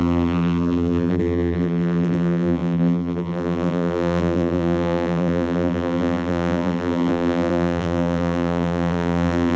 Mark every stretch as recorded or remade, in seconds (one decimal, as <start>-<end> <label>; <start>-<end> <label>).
0.0-9.6 remade